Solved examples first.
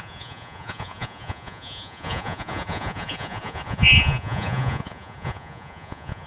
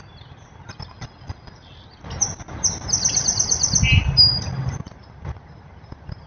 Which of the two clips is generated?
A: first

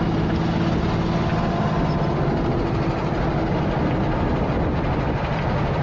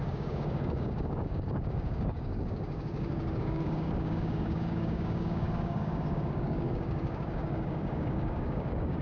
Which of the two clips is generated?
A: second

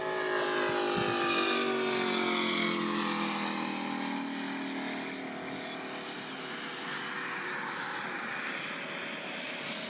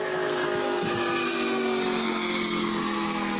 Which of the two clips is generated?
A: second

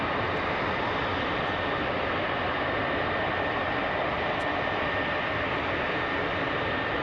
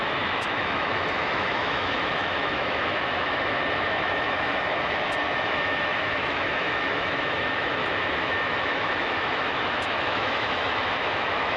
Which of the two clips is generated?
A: second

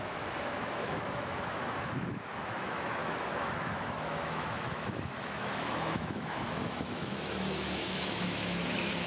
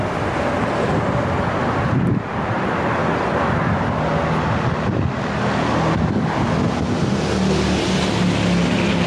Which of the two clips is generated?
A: first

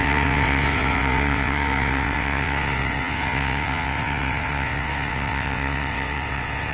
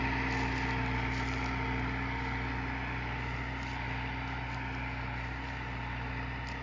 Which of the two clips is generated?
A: first